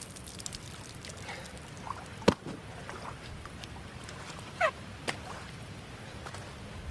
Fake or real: real